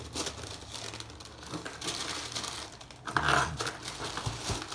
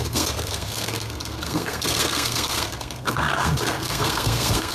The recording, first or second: first